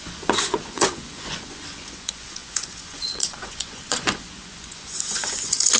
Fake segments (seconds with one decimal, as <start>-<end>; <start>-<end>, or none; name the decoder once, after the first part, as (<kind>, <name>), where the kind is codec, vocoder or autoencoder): 0.0-5.8 (vocoder, Vocos)